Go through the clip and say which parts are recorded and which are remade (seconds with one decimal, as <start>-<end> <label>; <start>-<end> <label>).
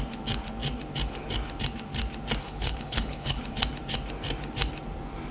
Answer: 0.0-2.4 recorded; 2.4-3.4 remade; 3.4-5.3 recorded